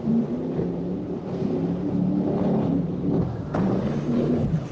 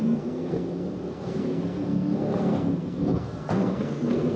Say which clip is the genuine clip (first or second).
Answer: first